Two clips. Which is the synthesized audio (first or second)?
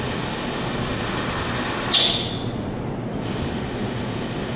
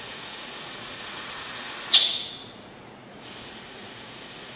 second